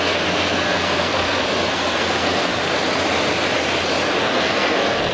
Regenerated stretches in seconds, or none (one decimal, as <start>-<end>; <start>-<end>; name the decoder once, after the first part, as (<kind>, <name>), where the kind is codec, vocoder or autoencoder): 0.0-2.5 (codec, SNAC); 4.2-5.1